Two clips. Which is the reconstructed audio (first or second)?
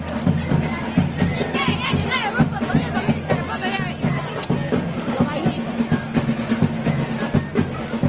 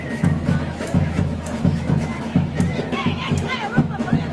second